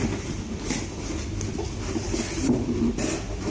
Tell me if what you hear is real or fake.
real